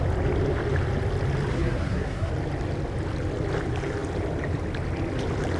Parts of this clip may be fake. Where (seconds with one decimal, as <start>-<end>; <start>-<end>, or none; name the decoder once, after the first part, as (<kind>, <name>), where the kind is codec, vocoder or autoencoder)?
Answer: 1.5-2.3 (codec, SNAC)